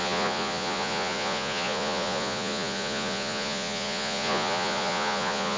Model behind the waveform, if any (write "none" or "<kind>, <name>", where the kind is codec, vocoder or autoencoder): vocoder, Vocos